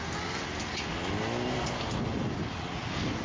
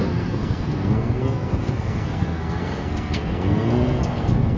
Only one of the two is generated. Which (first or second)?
second